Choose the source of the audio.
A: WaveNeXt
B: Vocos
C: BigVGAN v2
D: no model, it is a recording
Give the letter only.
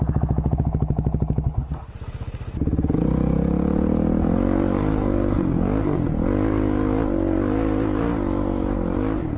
D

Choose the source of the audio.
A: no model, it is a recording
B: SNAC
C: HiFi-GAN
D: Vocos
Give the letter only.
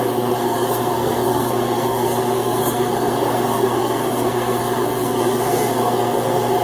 B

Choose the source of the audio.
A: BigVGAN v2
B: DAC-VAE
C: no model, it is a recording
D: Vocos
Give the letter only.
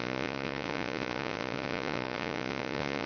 D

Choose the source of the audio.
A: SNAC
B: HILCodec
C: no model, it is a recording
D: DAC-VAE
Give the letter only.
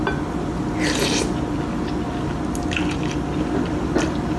C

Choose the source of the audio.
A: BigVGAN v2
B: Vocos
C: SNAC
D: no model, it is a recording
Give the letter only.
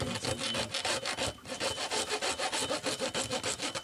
D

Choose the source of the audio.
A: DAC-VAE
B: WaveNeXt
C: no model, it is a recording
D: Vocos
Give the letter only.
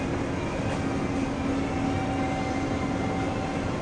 C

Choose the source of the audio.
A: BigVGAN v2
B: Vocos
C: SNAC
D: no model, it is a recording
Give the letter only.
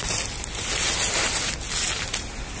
D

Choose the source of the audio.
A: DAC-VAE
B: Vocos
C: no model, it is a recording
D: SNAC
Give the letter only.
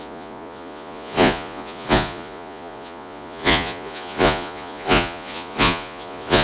B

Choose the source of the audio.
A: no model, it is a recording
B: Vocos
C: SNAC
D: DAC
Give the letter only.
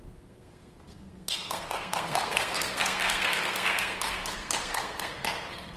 C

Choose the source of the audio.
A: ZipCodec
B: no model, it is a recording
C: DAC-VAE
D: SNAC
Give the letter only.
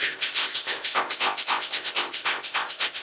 A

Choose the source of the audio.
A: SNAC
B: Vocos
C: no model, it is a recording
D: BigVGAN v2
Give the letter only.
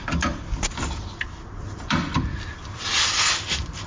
D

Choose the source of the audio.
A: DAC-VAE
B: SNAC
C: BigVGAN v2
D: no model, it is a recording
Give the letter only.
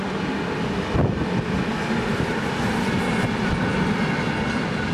D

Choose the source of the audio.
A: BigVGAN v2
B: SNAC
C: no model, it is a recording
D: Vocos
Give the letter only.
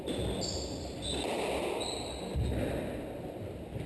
C